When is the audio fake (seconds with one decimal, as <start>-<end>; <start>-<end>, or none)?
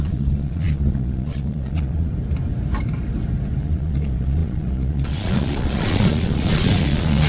0.0-2.1; 3.6-7.3